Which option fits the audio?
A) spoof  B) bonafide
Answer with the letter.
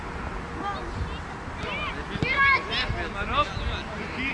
B